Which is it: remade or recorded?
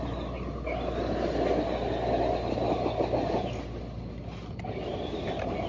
recorded